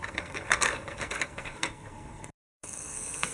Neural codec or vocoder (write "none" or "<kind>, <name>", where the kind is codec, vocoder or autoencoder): codec, SNAC